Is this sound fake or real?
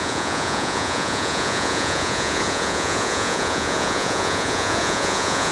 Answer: fake